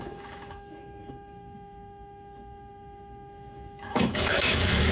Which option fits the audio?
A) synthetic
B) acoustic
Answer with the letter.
A